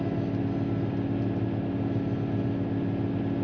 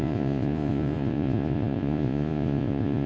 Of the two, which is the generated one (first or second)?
second